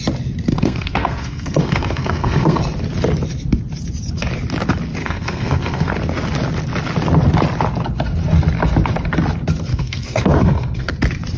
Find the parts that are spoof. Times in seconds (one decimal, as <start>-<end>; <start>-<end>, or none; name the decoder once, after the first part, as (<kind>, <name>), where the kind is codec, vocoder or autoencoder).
0.5-2.6 (codec, SNAC); 5.0-5.9; 9.7-10.9